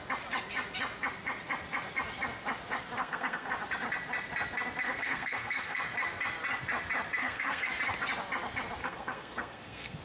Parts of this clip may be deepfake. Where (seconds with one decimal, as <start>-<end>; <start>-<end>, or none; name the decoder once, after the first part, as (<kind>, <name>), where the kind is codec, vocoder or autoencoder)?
3.0-3.5 (codec, SNAC); 4.8-5.8; 7.2-7.7; 8.8-10.0